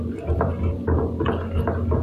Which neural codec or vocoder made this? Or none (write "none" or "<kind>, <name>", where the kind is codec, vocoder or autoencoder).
none